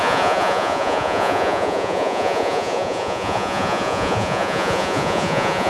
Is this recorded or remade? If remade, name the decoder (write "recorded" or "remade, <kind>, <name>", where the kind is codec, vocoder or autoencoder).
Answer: remade, vocoder, Vocos